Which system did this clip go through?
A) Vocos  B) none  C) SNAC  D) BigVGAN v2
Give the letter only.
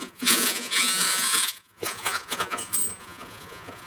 A